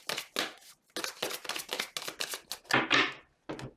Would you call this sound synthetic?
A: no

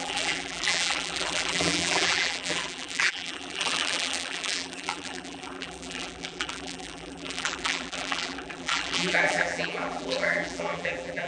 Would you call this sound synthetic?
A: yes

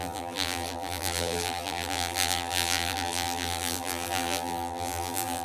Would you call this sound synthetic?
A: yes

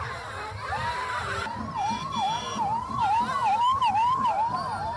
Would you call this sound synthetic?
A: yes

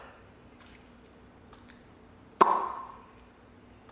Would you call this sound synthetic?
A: yes